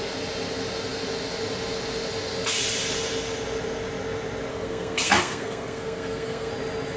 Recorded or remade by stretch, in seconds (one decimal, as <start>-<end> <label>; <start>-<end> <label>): 0.0-4.5 recorded; 4.5-6.5 remade; 6.5-7.0 recorded